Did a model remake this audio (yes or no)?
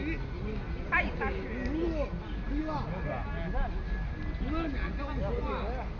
no